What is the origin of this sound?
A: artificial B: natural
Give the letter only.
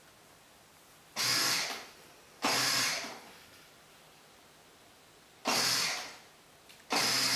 B